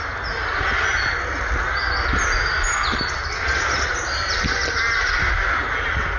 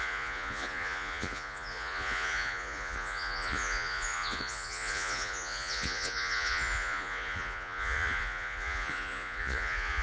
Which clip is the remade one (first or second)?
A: second